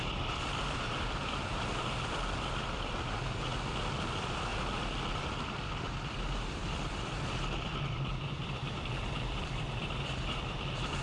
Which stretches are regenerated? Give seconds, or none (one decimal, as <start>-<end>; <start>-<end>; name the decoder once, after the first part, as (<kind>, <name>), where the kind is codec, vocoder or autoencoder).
0.0-3.5 (vocoder, BigVGAN v2); 4.1-4.5; 5.1-11.0